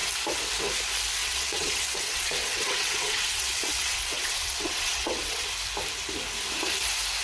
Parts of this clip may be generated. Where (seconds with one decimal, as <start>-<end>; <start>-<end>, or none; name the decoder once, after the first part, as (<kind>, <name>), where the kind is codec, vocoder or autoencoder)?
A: 1.2-5.5 (vocoder, WaveNeXt)